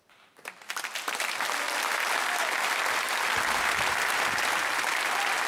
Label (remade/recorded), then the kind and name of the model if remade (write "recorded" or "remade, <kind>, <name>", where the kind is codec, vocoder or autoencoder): recorded